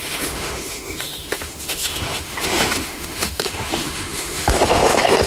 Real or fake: fake